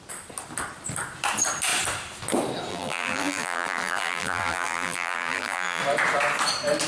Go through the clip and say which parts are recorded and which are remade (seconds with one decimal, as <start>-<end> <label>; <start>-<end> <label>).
0.0-2.7 recorded; 2.7-5.8 remade; 5.8-6.9 recorded